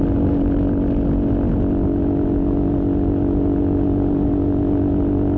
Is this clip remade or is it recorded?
recorded